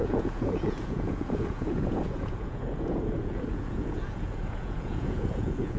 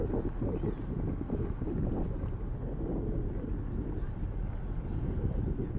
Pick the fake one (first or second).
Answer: first